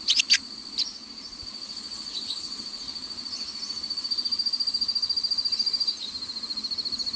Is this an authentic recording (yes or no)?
yes